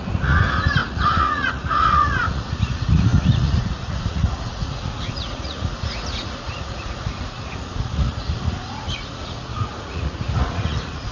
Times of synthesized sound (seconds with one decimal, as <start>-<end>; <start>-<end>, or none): 0.0-11.1